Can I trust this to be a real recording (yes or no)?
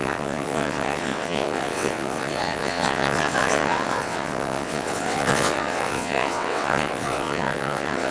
no